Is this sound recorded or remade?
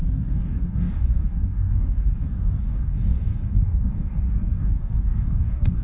remade